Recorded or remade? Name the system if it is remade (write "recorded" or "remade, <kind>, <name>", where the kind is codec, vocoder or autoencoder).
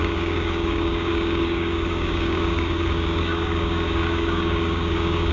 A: remade, codec, DAC